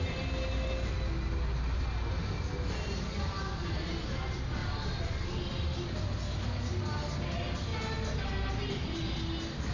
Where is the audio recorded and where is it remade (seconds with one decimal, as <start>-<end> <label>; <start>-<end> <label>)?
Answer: 0.0-9.7 recorded